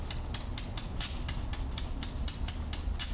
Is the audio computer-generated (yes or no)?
no